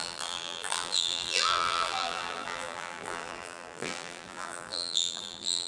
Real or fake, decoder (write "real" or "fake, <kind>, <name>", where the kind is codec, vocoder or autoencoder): fake, vocoder, BigVGAN v2